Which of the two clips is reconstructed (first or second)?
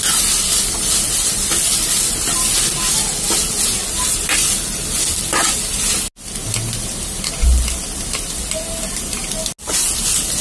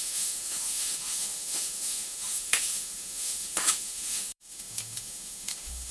second